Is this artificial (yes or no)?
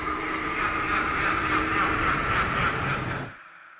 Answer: yes